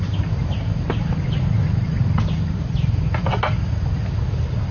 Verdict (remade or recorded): recorded